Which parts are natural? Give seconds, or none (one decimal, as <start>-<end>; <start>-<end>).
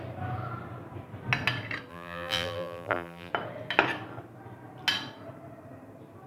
0.0-1.9; 3.3-6.3